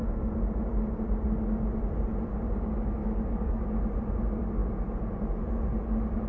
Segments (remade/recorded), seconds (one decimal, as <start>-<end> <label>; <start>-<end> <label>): 0.0-3.0 recorded; 3.0-3.6 remade; 3.6-6.3 recorded